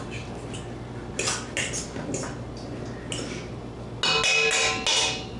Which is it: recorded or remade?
recorded